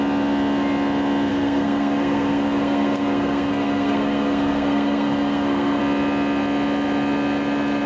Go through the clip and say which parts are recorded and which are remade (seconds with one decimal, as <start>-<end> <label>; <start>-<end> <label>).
0.0-1.3 recorded; 1.3-5.8 remade; 5.8-7.9 recorded